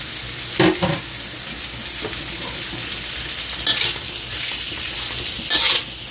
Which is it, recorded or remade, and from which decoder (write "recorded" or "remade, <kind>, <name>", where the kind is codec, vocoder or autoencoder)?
recorded